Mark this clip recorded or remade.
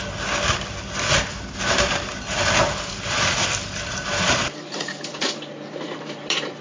remade